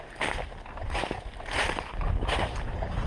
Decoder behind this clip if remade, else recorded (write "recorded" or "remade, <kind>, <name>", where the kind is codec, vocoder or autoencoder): recorded